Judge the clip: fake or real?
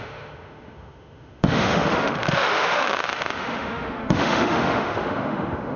fake